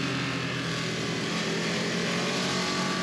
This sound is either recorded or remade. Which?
recorded